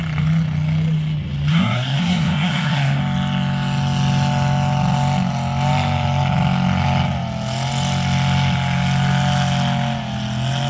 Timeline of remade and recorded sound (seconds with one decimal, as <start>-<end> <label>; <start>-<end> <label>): 0.0-1.5 recorded; 1.5-3.0 remade; 3.0-10.7 recorded